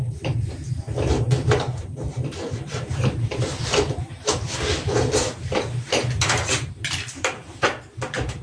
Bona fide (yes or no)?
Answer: no